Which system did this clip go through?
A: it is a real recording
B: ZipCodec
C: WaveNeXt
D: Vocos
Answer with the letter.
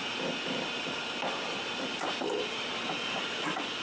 A